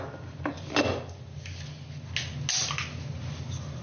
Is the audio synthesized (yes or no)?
no